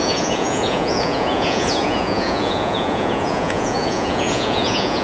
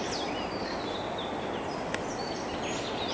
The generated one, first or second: first